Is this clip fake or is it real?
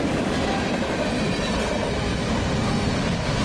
real